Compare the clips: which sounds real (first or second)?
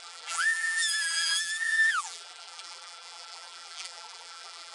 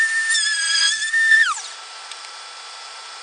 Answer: second